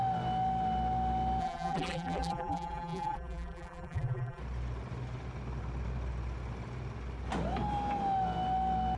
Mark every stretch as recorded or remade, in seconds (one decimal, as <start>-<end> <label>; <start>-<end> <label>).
0.0-1.4 recorded; 1.4-4.4 remade; 4.4-9.0 recorded